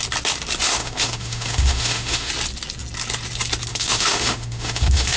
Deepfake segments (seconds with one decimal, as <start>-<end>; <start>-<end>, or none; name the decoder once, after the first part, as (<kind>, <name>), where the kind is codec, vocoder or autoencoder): 0.7-2.3 (autoencoder, DAC-VAE); 3.7-5.2